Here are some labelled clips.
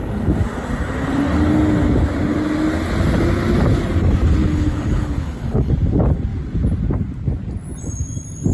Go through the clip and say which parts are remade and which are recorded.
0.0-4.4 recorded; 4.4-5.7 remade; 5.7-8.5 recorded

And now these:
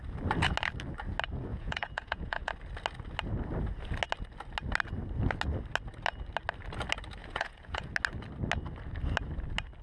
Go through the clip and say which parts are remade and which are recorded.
0.0-1.5 recorded; 1.5-2.5 remade; 2.5-7.2 recorded; 7.2-7.9 remade; 7.9-9.8 recorded

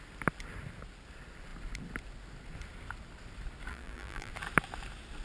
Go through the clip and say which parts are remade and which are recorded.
0.0-3.7 recorded; 3.7-4.3 remade; 4.3-5.2 recorded

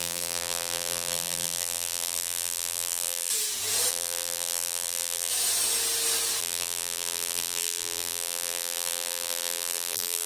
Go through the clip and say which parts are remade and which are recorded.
0.0-3.3 remade; 3.3-3.9 recorded; 3.9-5.3 remade; 5.3-6.4 recorded; 6.4-10.3 remade

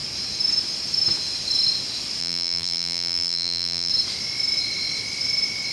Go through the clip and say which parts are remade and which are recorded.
0.0-2.2 recorded; 2.2-3.9 remade; 3.9-5.7 recorded

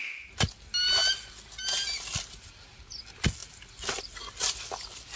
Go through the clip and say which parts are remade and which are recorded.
0.0-5.2 recorded

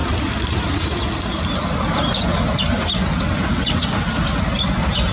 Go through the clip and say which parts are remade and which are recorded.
0.0-5.1 recorded

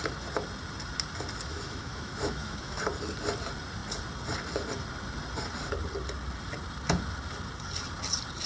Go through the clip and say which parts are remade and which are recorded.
0.0-1.5 recorded; 1.5-2.8 remade; 2.8-8.5 recorded